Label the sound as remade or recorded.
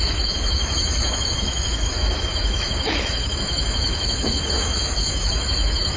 remade